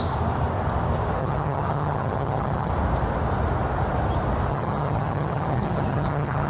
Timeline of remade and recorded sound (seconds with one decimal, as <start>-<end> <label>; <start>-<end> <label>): 0.0-1.2 recorded; 1.2-2.7 remade; 2.7-4.5 recorded; 4.5-6.5 remade